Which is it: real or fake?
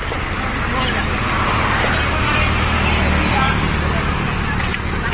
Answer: real